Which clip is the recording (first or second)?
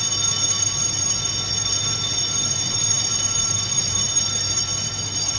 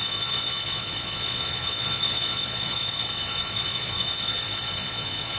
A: first